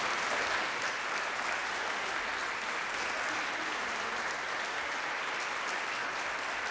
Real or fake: real